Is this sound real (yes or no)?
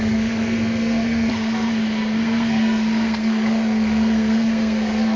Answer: no